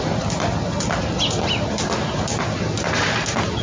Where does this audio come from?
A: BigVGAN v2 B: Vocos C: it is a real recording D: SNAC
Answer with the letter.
C